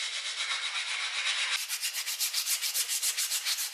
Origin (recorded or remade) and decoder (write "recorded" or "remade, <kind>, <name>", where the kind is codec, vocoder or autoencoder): recorded